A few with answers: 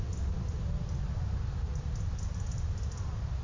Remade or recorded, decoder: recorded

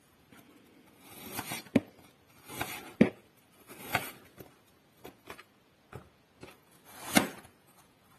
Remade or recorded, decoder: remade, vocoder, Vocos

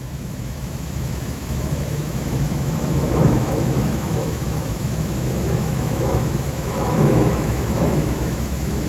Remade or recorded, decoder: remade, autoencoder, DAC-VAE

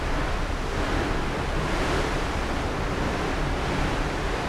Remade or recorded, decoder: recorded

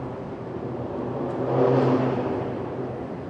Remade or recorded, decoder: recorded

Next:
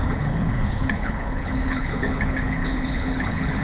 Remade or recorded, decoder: remade, codec, HILCodec